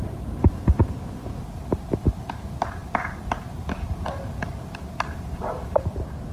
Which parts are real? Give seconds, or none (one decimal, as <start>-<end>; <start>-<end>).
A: 0.0-6.3